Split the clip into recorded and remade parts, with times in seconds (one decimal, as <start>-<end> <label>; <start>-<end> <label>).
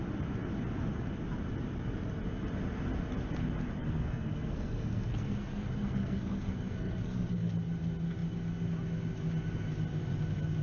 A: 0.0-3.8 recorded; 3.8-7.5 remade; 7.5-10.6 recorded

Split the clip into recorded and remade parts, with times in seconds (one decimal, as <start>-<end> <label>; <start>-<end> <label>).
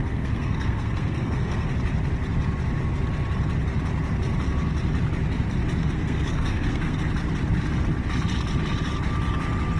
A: 0.0-1.7 remade; 1.7-5.8 recorded; 5.8-7.0 remade; 7.0-9.8 recorded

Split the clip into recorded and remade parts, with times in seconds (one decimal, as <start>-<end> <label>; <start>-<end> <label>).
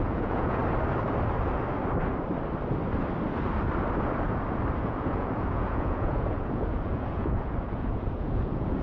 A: 0.0-0.6 remade; 0.6-4.8 recorded; 4.8-8.8 remade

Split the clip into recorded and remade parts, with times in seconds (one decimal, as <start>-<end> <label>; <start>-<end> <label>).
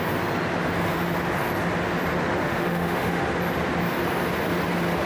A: 0.0-2.4 recorded; 2.4-3.2 remade; 3.2-5.1 recorded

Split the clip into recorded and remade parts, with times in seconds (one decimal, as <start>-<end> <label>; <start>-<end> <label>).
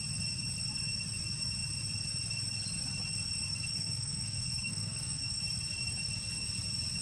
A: 0.0-3.7 recorded; 3.7-5.4 remade; 5.4-7.0 recorded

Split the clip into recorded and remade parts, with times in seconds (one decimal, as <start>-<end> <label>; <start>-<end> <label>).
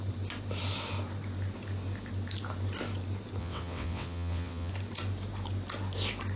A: 0.0-3.4 recorded; 3.4-4.7 remade; 4.7-6.4 recorded